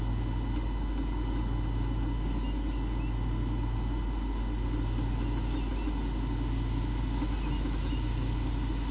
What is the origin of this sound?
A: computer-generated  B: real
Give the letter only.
B